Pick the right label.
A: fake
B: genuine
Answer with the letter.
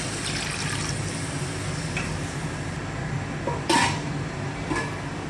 B